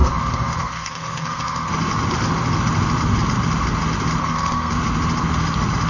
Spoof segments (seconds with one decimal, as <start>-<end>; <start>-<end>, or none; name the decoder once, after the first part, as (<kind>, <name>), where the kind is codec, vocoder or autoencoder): 0.0-1.7 (codec, SNAC); 4.2-4.7